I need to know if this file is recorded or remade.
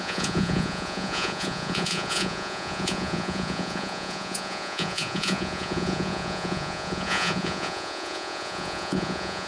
remade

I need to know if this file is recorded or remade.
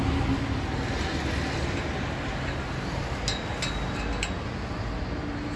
recorded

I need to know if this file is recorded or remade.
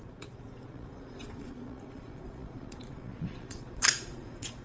remade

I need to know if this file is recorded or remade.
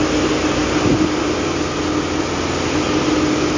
recorded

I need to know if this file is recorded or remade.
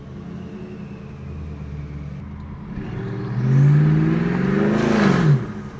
recorded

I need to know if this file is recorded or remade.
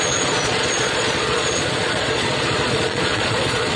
remade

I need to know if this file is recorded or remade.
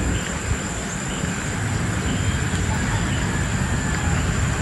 recorded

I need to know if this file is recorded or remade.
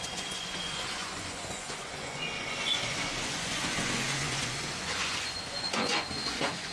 remade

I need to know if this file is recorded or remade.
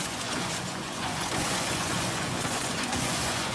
remade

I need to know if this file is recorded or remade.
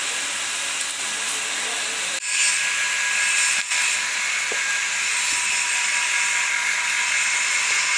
recorded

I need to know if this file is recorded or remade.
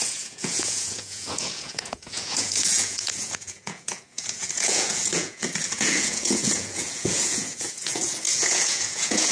remade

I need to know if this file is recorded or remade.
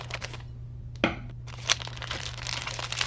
recorded